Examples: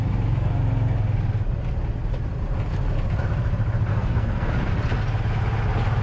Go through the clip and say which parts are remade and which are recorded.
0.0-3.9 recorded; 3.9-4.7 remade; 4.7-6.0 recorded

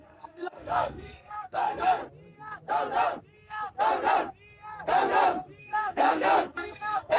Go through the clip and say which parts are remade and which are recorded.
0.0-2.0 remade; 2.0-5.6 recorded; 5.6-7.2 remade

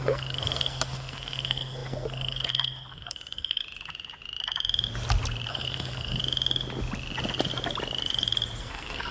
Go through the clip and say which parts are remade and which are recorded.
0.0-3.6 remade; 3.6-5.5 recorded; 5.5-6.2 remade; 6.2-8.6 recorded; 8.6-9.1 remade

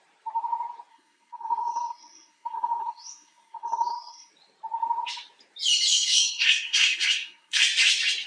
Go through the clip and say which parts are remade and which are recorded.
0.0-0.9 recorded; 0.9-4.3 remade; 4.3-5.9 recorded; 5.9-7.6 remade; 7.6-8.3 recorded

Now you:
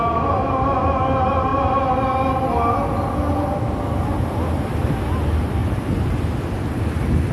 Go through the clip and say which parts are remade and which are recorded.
0.0-7.3 recorded